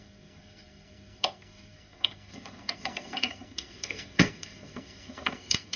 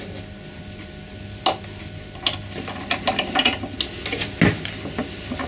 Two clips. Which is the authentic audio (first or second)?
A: second